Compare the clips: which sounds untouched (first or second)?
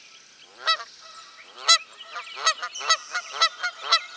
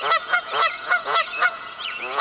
first